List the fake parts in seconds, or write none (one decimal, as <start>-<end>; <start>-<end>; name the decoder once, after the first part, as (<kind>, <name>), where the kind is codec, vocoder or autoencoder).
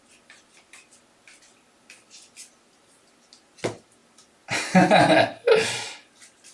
none